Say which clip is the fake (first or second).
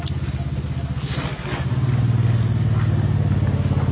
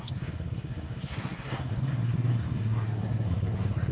second